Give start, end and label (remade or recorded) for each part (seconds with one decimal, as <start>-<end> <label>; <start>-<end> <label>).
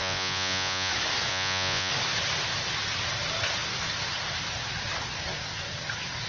0.0-0.9 remade; 0.9-1.3 recorded; 1.3-1.9 remade; 1.9-6.3 recorded